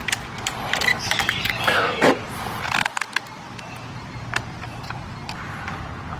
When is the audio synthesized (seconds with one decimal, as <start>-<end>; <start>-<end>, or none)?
0.9-2.1